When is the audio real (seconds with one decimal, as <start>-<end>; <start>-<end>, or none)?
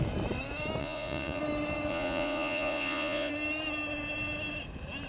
0.0-0.8; 1.4-1.9; 3.3-5.1